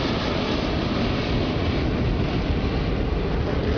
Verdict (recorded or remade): recorded